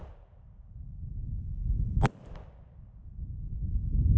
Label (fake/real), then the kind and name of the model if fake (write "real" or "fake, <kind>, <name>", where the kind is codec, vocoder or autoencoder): real